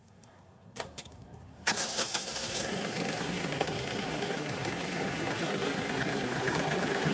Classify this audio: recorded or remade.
remade